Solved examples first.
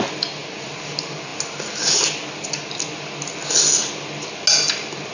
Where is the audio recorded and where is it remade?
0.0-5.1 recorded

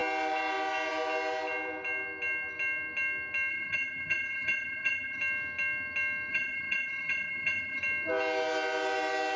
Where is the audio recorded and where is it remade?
0.0-3.5 recorded; 3.5-5.2 remade; 5.2-6.3 recorded; 6.3-7.8 remade; 7.8-9.4 recorded

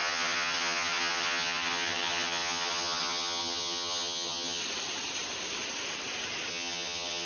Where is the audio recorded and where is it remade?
0.0-4.6 remade; 4.6-6.5 recorded; 6.5-7.3 remade

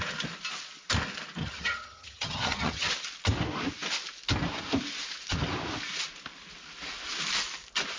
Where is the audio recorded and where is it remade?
0.0-1.4 recorded; 1.4-2.9 remade; 2.9-8.0 recorded